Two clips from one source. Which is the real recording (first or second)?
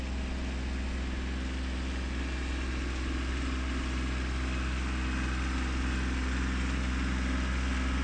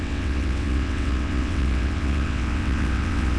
first